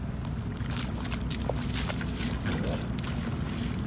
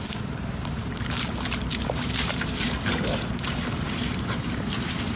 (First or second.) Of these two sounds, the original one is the first